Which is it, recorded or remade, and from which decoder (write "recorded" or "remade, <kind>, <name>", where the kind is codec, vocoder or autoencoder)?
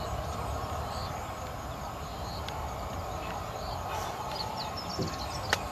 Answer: recorded